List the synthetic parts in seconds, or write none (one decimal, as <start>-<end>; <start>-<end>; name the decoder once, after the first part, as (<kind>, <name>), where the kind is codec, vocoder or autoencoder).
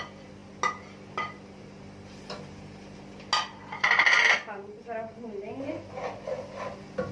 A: none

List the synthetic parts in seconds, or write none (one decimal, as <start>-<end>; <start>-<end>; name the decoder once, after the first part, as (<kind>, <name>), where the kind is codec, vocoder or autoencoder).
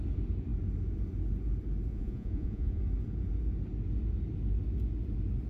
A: 1.9-2.8 (vocoder, Vocos)